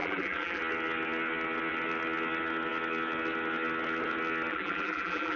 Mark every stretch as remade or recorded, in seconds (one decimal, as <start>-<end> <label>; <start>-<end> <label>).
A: 0.0-0.6 remade; 0.6-4.5 recorded; 4.5-5.4 remade